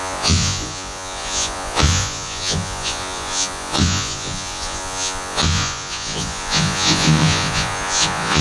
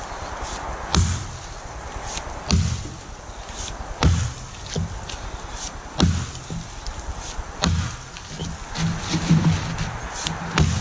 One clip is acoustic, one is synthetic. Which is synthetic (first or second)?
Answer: first